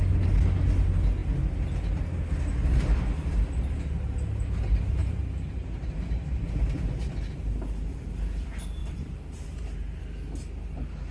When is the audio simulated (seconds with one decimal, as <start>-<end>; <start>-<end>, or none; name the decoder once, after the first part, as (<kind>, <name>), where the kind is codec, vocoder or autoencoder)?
5.0-6.5 (vocoder, BigVGAN v2); 8.8-10.0